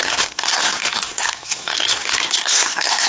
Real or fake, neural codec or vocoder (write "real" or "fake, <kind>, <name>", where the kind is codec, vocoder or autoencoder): fake, codec, SNAC